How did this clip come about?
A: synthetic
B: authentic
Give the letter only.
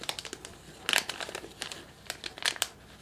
B